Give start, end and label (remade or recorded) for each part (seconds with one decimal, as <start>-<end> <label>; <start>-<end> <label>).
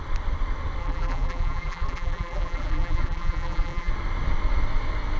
0.0-0.8 recorded; 0.8-3.9 remade; 3.9-5.2 recorded